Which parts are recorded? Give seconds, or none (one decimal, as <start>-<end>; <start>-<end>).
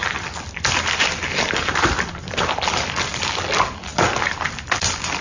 none